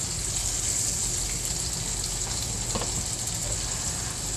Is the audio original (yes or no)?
yes